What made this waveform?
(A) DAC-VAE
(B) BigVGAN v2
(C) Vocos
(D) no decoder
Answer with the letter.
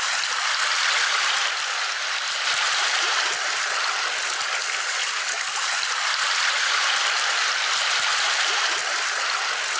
B